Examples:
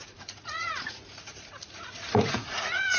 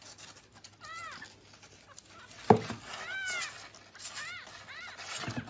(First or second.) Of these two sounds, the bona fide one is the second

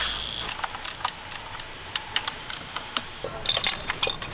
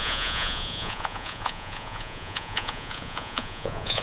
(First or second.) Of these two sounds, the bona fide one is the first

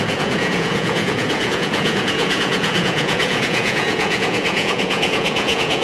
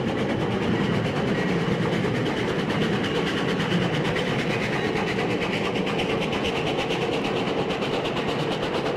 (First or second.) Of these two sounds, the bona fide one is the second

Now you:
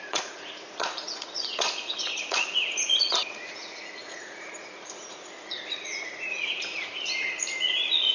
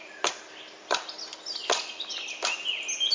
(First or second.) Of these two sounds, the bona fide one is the second